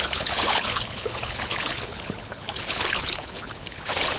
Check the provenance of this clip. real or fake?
fake